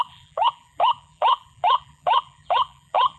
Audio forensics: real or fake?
fake